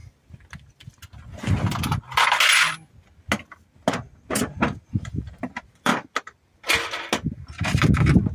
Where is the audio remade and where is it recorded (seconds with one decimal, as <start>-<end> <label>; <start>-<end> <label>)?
0.0-4.3 recorded; 4.3-5.9 remade; 5.9-7.5 recorded; 7.5-8.3 remade